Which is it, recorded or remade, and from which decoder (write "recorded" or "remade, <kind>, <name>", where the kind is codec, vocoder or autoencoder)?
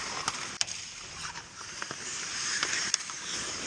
remade, vocoder, BigVGAN v2